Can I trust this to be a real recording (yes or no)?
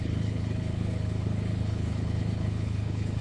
no